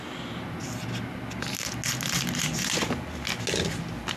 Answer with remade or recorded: recorded